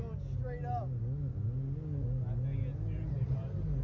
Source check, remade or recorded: recorded